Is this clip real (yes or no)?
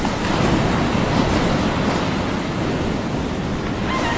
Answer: yes